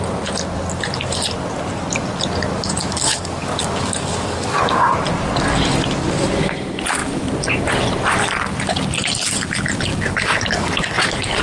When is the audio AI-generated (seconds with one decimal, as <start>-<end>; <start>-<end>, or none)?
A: 2.8-4.9; 9.9-11.4